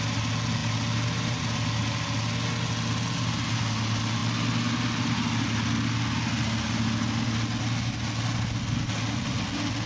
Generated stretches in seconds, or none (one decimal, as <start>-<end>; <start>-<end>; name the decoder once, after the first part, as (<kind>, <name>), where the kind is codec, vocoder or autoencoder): none